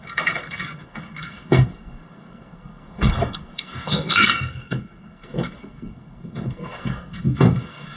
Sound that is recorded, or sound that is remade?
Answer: remade